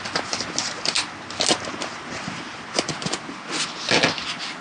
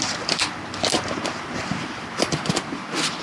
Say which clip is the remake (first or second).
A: second